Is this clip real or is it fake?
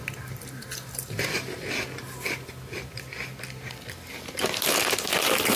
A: real